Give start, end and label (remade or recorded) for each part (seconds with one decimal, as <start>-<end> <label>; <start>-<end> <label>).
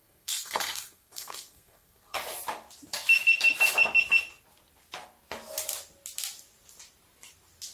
0.0-2.2 remade; 2.2-7.7 recorded